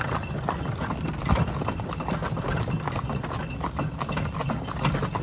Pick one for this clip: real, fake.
real